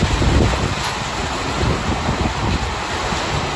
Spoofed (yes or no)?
no